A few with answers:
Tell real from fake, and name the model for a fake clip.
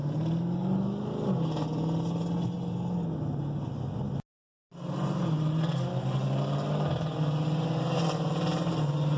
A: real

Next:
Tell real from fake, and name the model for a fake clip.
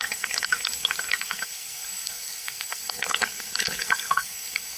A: fake, codec, SNAC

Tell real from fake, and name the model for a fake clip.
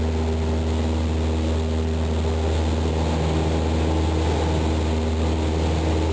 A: real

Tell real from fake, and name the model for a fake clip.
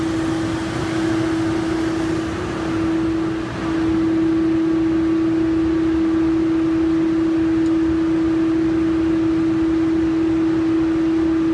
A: real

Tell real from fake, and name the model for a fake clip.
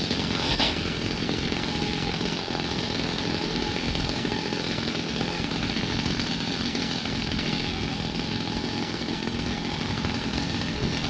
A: fake, codec, SNAC